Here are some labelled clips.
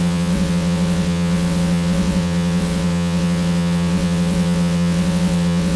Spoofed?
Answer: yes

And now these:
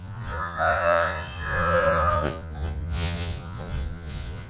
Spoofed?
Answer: yes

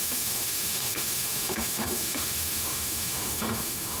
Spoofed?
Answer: yes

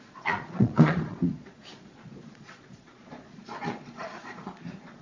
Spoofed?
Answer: yes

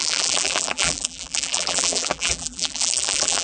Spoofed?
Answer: yes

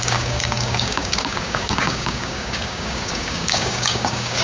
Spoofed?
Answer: yes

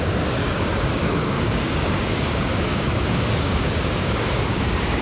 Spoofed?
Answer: yes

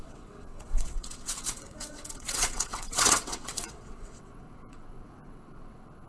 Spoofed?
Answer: yes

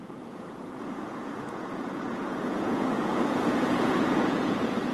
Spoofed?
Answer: yes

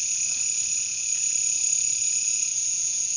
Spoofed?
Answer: yes